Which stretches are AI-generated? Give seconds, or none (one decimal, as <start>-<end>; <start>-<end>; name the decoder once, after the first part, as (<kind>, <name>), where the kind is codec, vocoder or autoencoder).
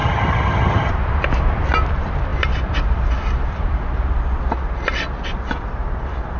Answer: 0.0-0.9 (vocoder, HiFi-GAN)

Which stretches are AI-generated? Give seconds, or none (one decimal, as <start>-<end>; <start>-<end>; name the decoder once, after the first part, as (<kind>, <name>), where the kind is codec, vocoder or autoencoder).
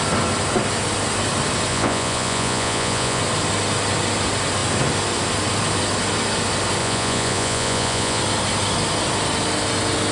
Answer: 1.7-3.2 (vocoder, Vocos); 6.8-8.2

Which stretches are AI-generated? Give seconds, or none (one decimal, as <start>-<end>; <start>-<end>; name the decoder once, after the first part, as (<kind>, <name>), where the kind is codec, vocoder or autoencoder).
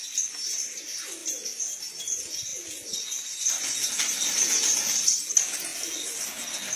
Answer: none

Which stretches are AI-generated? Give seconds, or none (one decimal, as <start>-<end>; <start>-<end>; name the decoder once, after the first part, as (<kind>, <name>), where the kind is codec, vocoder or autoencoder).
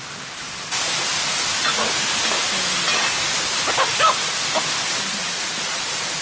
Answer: none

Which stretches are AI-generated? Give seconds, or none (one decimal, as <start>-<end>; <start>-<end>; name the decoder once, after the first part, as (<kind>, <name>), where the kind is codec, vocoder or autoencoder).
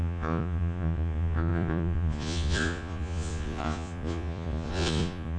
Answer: 0.0-5.4 (vocoder, Vocos)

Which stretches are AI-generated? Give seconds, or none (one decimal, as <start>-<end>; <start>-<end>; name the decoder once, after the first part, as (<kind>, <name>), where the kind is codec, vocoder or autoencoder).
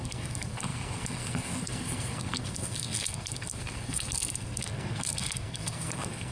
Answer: 0.0-6.3 (codec, SNAC)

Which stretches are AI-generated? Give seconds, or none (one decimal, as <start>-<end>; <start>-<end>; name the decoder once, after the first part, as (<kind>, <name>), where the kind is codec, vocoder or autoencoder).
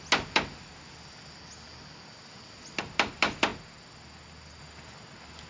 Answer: none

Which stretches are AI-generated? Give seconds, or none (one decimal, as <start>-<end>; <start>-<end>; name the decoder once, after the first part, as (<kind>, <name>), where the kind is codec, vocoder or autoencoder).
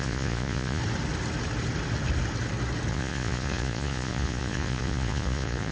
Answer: 0.0-0.8 (vocoder, Vocos); 2.9-5.7